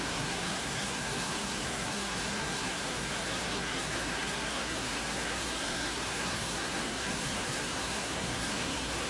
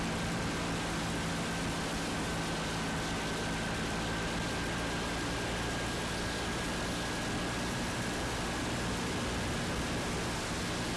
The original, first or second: second